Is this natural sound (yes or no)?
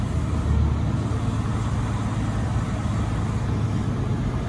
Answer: yes